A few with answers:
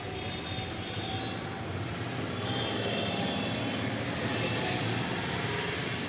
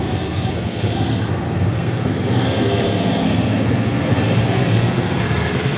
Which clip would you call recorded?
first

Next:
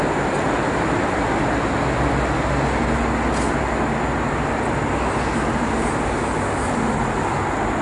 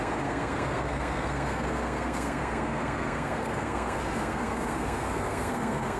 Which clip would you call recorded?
first